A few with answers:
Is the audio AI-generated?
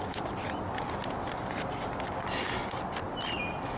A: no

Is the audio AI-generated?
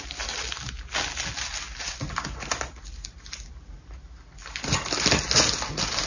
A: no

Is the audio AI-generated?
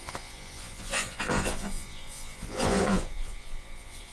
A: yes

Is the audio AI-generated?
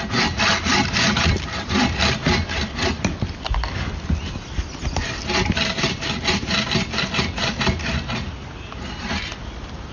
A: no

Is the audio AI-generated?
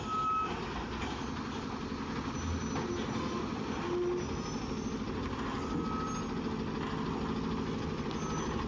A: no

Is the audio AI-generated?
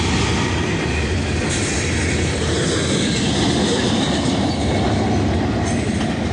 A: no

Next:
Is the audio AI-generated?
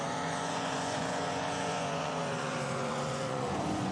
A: yes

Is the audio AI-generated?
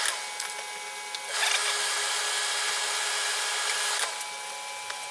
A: no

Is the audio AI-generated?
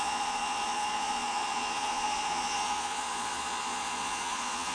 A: yes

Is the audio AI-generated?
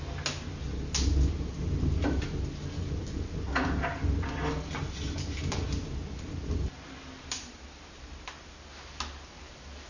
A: no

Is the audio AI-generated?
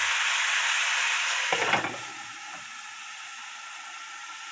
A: no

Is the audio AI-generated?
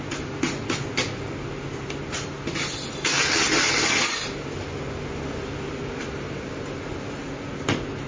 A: no